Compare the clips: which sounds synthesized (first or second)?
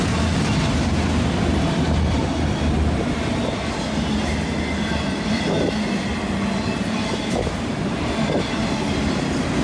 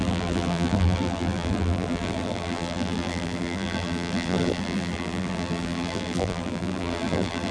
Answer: second